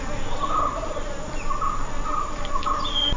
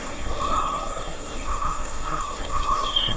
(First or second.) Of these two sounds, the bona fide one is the first